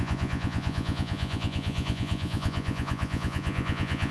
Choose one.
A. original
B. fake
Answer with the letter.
B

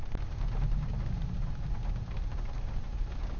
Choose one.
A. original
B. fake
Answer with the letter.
A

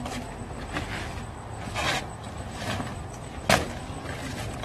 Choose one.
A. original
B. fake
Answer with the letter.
A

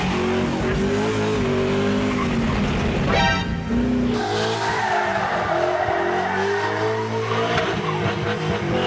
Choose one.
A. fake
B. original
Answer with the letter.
B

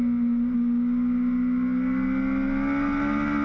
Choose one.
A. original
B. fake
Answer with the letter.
A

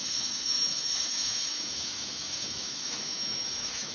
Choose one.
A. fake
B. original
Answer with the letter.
A